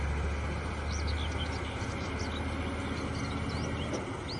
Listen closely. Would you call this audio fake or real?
real